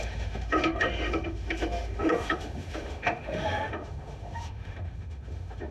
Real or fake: fake